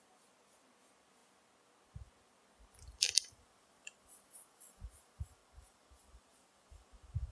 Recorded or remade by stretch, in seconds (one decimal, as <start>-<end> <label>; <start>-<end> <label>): 0.0-5.4 recorded; 5.4-6.6 remade; 6.6-7.3 recorded